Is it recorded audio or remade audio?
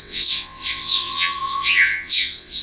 remade